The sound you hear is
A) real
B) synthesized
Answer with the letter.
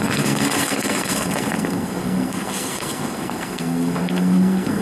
B